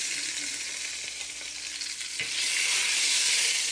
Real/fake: real